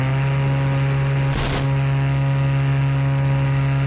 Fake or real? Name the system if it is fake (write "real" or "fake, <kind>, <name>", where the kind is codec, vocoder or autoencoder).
real